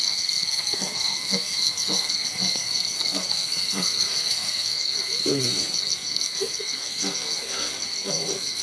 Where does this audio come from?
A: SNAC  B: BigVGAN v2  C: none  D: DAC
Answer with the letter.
A